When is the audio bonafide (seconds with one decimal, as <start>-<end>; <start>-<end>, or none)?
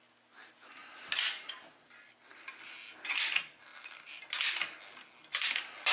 0.0-0.8; 1.5-5.9